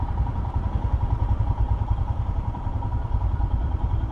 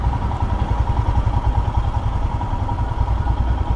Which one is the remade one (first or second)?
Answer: first